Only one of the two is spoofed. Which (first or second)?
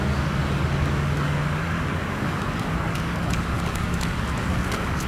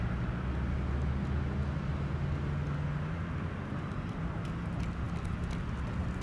first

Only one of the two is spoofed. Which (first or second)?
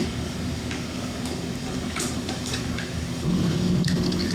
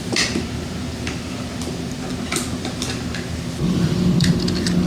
first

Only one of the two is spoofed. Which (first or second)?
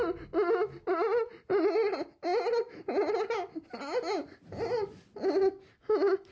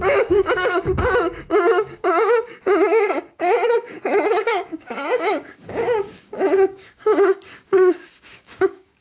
second